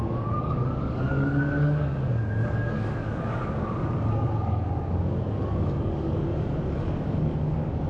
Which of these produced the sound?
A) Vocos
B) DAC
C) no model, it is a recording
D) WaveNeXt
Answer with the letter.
B